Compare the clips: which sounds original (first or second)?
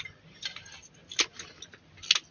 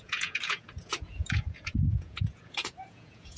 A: first